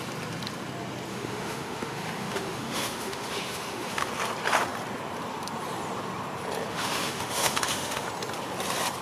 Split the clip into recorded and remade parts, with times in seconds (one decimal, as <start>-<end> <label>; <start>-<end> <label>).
0.0-1.1 recorded; 1.1-4.1 remade; 4.1-6.7 recorded; 6.7-8.1 remade; 8.1-9.0 recorded